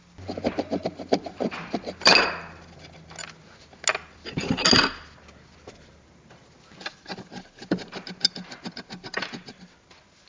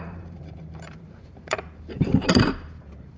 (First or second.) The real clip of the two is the first